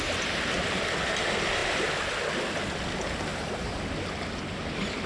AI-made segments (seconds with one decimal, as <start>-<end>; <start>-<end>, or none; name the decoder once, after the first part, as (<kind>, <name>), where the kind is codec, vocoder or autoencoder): 3.3-3.8 (vocoder, BigVGAN v2)